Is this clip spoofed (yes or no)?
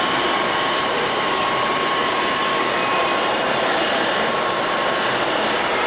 yes